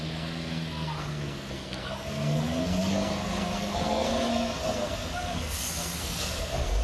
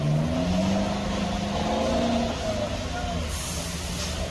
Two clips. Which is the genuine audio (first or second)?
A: second